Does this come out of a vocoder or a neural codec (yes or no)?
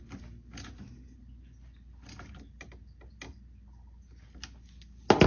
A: no